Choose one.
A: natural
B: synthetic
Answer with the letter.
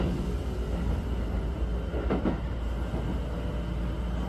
A